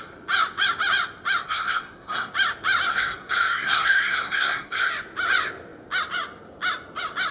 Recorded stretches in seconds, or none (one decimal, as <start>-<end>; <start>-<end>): 0.0-1.4; 2.3-2.9; 4.9-7.3